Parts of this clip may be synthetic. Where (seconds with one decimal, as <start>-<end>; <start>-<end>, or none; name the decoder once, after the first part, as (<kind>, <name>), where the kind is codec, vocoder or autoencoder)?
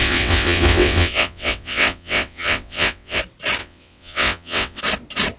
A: 0.0-3.2 (vocoder, WaveNeXt); 3.6-4.8